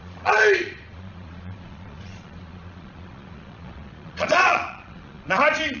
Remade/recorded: remade